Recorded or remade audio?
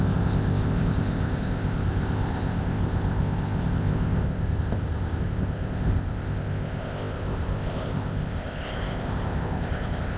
remade